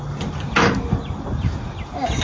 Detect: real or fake real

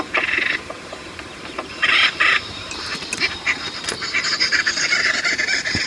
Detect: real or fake fake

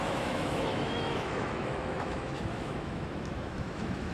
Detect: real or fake fake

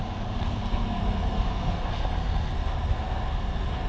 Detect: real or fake fake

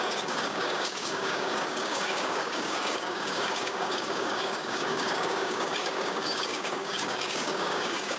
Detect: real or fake fake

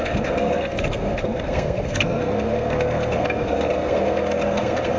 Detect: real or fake fake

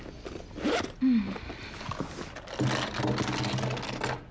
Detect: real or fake real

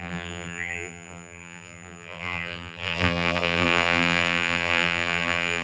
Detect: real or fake fake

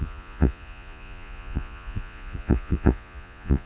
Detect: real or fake fake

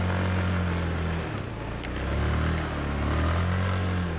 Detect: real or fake real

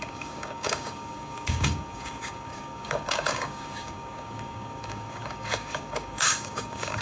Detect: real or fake fake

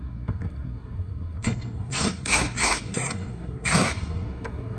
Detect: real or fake fake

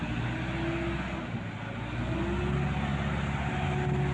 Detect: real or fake real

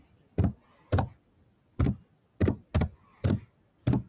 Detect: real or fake real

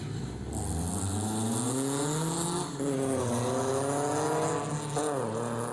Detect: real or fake real